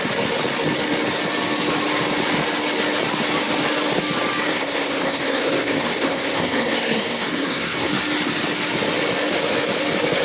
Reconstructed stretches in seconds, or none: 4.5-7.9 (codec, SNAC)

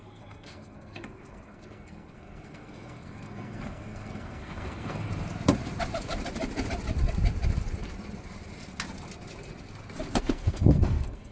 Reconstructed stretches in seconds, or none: 0.0-5.1 (codec, SNAC); 10.2-11.3

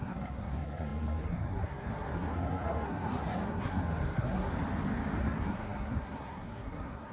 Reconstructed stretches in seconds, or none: 0.0-4.5 (codec, SNAC); 5.2-7.1

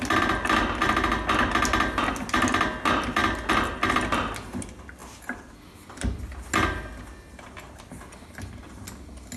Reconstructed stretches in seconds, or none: none